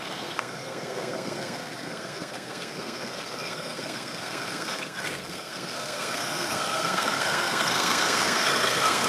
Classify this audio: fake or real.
fake